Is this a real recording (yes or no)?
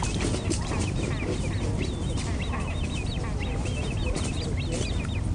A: yes